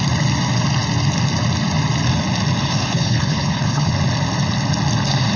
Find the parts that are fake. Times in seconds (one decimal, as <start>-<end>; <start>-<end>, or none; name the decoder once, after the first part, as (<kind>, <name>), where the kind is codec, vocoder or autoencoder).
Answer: 2.7-3.9 (codec, HILCodec)